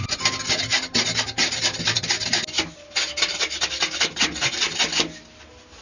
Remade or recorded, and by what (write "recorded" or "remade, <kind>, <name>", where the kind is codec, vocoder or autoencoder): recorded